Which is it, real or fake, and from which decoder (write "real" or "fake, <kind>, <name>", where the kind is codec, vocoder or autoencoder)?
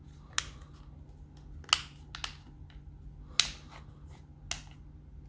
real